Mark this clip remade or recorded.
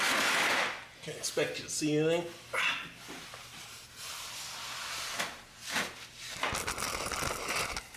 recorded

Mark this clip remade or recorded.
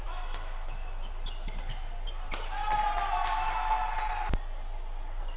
recorded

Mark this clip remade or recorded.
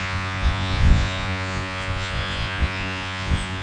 remade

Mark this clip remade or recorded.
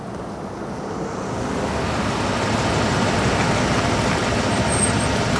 recorded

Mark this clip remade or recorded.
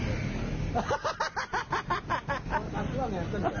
recorded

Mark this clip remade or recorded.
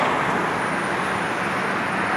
recorded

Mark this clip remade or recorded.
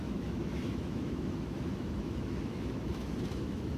remade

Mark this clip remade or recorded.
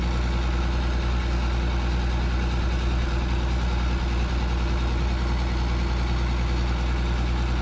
recorded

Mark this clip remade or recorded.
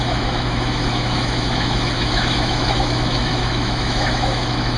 remade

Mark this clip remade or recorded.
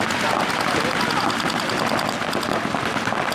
recorded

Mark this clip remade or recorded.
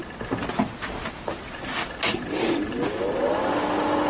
recorded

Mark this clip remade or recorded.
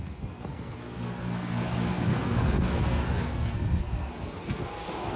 remade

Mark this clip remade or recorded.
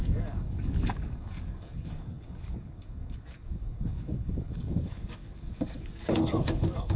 remade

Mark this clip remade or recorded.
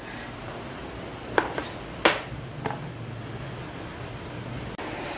recorded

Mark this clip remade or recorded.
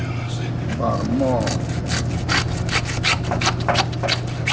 recorded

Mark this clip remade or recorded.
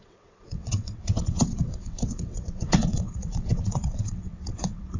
remade